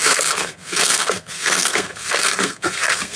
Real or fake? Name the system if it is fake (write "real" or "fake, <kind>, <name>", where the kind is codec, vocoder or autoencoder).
fake, codec, SNAC